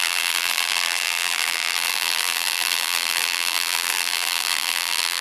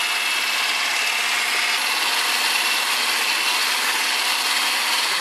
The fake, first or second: first